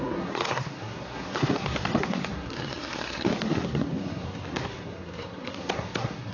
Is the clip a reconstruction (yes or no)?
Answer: yes